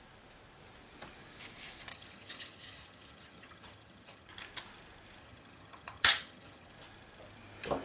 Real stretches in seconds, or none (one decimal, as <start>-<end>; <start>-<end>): 0.0-1.9; 4.3-5.2; 6.7-7.8